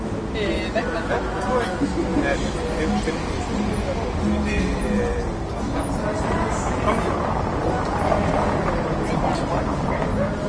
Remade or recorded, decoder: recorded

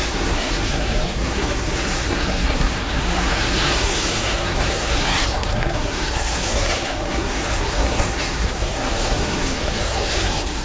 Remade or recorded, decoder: remade, codec, SNAC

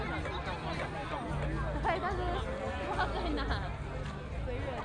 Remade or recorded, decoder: recorded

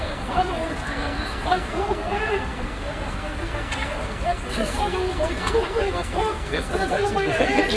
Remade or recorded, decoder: remade, codec, SNAC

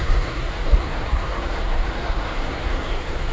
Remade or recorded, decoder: remade, codec, SNAC